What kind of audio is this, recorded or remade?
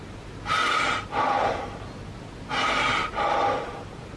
recorded